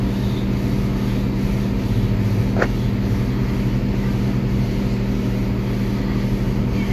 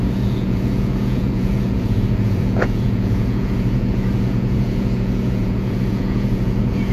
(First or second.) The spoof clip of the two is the second